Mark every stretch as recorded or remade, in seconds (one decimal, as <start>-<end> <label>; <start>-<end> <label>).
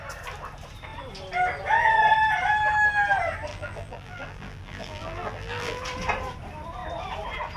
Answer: 0.0-3.5 recorded; 3.5-5.8 remade; 5.8-7.6 recorded